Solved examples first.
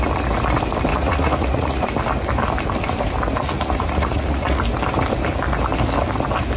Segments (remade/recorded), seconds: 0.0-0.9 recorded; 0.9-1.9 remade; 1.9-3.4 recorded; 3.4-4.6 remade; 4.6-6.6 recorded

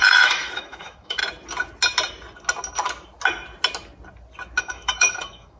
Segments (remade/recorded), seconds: 0.0-1.2 remade; 1.2-4.6 recorded; 4.6-5.6 remade

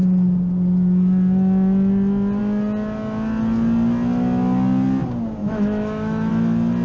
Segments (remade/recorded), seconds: 0.0-5.4 recorded; 5.4-6.3 remade; 6.3-6.8 recorded

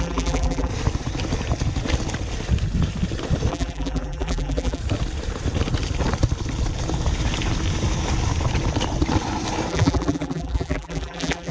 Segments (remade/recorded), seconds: 0.0-0.7 remade; 0.7-3.5 recorded; 3.5-4.8 remade; 4.8-9.7 recorded; 9.7-11.5 remade